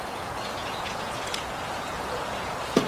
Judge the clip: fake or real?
fake